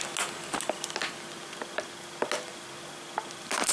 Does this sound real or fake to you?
real